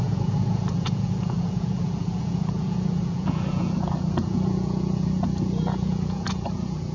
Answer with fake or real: fake